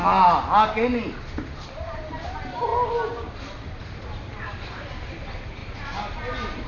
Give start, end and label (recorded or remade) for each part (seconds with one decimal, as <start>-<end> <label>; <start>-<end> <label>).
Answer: 0.0-6.7 recorded